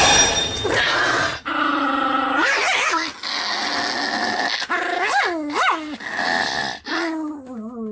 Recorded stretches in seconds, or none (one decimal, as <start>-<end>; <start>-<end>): 0.0-1.3; 2.9-7.9